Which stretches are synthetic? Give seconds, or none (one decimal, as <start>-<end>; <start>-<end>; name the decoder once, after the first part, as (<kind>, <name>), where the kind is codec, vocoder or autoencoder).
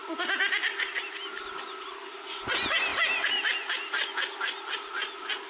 none